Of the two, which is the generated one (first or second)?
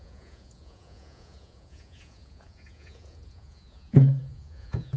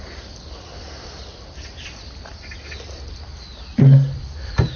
first